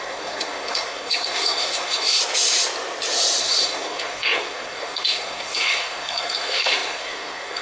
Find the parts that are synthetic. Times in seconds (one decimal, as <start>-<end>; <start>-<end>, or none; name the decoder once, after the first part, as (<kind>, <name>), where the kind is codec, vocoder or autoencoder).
0.0-2.2 (codec, SNAC); 3.4-7.6